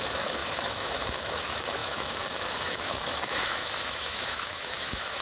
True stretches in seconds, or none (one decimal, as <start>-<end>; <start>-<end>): none